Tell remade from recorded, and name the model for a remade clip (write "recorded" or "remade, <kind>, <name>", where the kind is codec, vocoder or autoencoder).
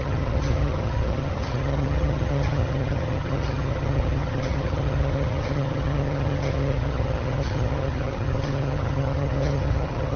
remade, vocoder, HiFi-GAN